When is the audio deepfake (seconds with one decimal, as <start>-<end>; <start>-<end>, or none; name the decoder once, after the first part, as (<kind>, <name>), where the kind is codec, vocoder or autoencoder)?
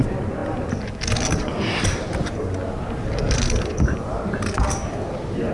none